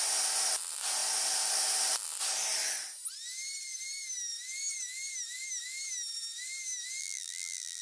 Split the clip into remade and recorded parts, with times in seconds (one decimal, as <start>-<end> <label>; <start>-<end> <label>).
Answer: 0.0-7.0 recorded; 7.0-7.8 remade